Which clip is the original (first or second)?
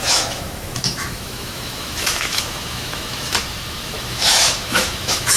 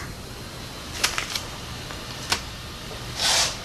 second